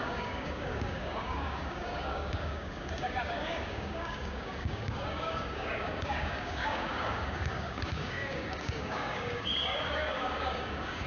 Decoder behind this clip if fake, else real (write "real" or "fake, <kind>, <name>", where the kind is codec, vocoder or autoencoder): fake, codec, DAC